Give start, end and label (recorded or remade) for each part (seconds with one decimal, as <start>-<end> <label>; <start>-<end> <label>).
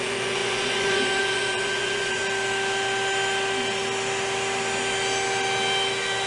0.0-2.2 remade; 2.2-6.3 recorded